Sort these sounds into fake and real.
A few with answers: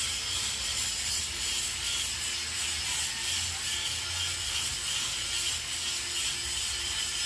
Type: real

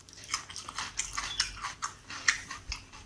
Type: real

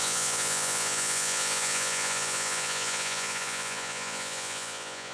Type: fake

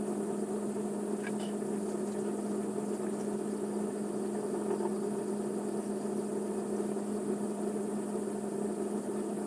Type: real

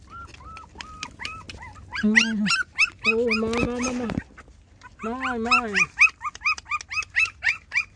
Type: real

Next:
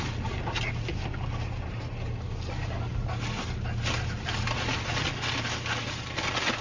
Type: real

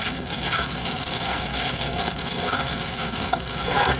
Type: fake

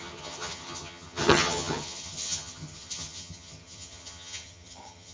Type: fake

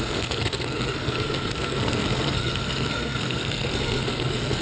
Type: fake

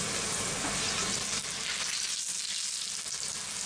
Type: real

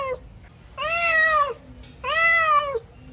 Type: real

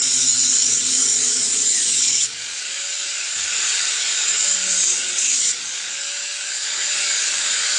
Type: fake